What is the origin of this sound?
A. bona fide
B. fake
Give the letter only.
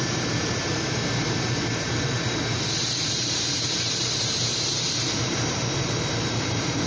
B